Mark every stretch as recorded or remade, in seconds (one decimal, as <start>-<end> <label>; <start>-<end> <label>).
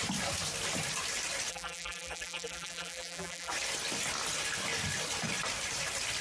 0.0-1.5 recorded; 1.5-3.5 remade; 3.5-6.2 recorded